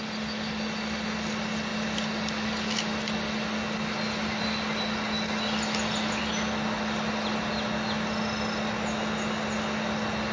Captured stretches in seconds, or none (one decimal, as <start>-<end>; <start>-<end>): 0.0-10.3